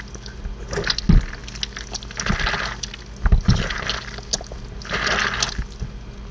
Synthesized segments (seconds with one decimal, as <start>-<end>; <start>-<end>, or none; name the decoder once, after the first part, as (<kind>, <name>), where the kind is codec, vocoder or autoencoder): none